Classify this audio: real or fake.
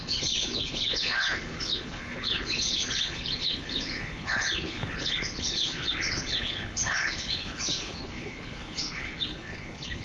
fake